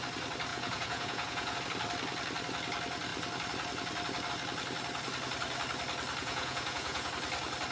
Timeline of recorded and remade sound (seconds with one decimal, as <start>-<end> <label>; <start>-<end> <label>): 0.0-0.5 recorded; 0.5-1.6 remade; 1.6-6.2 recorded; 6.2-7.1 remade; 7.1-7.7 recorded